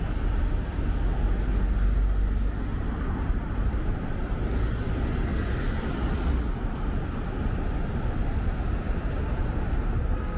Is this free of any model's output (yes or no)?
yes